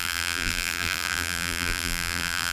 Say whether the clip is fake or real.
fake